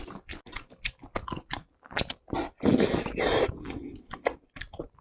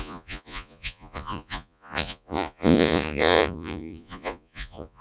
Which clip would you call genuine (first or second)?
first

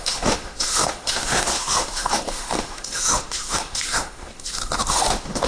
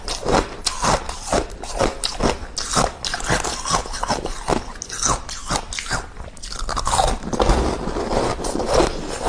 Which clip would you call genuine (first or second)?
second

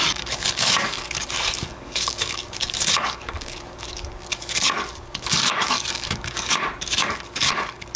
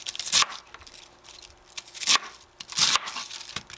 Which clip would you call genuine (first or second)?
second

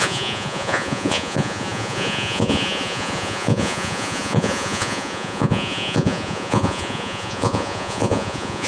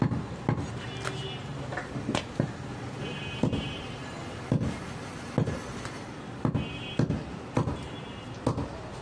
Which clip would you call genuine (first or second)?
second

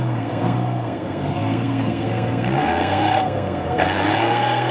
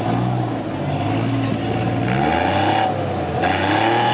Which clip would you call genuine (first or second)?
second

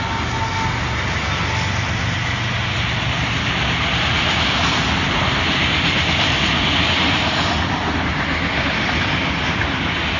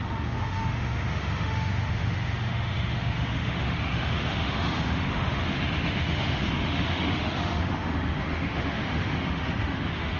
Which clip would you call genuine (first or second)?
first